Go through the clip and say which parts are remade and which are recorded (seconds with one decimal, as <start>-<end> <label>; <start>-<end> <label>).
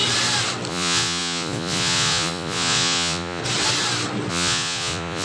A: 0.0-0.7 recorded; 0.7-3.4 remade; 3.4-4.3 recorded; 4.3-5.2 remade